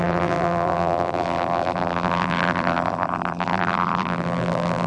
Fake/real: fake